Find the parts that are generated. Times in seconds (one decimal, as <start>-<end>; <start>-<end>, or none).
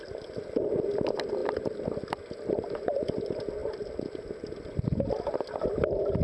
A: none